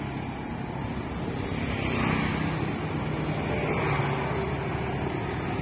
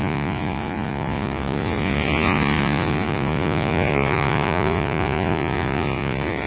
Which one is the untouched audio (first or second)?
first